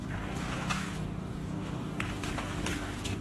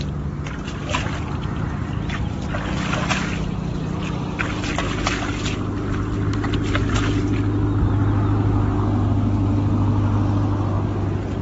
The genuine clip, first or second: second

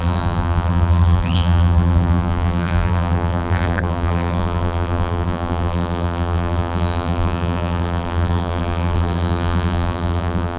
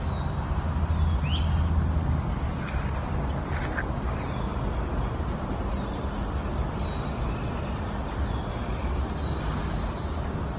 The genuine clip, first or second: second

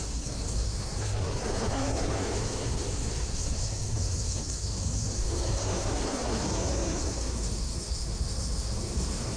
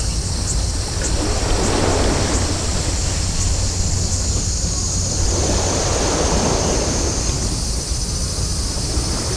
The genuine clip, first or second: second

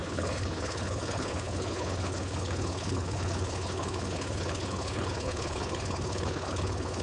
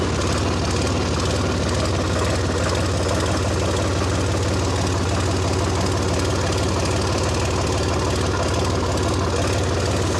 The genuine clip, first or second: second